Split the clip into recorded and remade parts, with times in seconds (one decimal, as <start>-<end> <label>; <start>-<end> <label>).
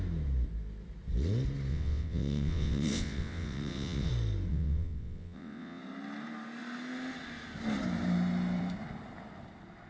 0.0-1.7 recorded; 1.7-4.1 remade; 4.1-4.5 recorded; 4.5-5.8 remade; 5.8-9.9 recorded